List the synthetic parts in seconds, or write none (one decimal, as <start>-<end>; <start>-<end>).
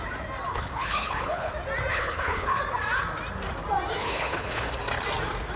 0.5-1.5; 1.9-2.6; 4.0-4.7